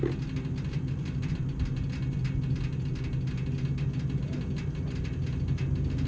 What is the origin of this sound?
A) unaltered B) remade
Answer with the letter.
A